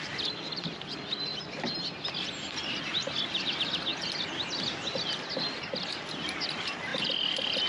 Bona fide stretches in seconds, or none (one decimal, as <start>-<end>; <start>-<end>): 1.3-2.8; 3.9-6.4